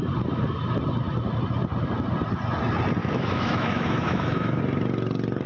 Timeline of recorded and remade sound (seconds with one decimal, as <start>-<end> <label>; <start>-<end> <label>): 0.0-3.0 recorded; 3.0-4.6 remade; 4.6-5.5 recorded